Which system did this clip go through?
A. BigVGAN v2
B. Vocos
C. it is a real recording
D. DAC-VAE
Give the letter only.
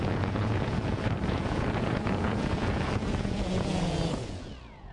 B